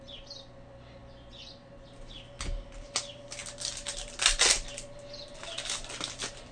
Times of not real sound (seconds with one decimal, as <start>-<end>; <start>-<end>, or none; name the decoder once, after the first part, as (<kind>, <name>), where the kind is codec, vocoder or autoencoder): none